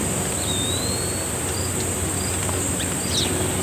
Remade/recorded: recorded